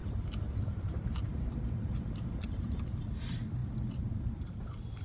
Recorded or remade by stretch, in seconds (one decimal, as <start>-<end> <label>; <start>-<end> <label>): 0.0-3.0 remade; 3.0-5.0 recorded